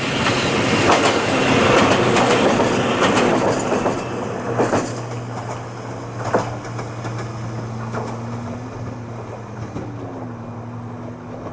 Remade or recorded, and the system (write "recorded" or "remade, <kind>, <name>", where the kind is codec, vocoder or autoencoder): recorded